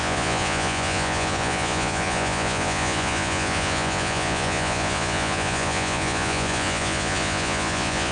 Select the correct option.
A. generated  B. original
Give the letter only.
A